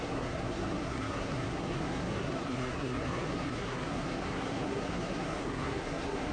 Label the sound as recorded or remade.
remade